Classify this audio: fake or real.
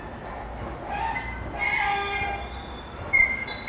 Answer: real